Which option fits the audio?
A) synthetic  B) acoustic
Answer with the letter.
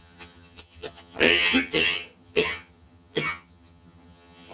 A